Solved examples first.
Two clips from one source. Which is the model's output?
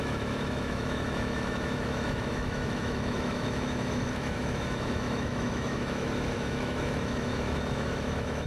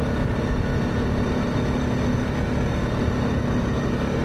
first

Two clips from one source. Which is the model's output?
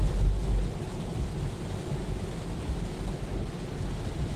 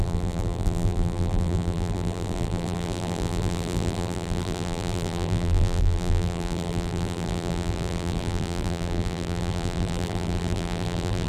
second